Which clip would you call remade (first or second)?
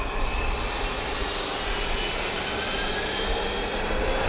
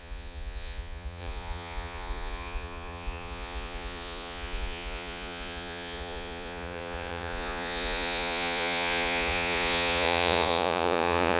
second